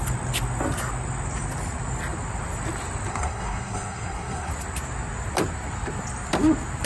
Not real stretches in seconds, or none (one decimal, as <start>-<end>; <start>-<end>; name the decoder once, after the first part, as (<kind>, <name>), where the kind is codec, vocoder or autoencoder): 3.1-4.5 (codec, SNAC)